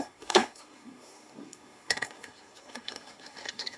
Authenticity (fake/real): fake